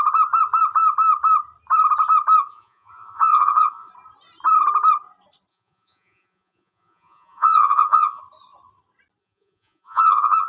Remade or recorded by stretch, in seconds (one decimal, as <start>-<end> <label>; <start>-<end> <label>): 0.0-2.4 recorded; 2.4-3.9 remade; 3.9-5.5 recorded; 5.5-8.2 remade; 8.2-9.2 recorded; 9.2-10.5 remade